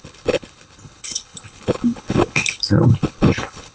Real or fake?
fake